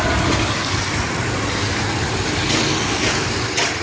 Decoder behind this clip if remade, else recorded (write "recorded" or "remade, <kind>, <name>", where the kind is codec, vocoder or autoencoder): recorded